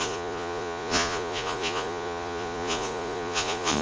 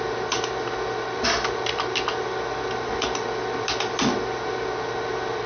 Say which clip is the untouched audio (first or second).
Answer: second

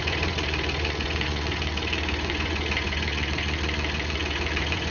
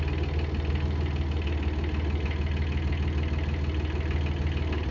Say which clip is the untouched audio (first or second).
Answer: second